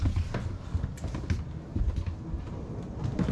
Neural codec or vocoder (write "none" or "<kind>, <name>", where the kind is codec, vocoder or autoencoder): none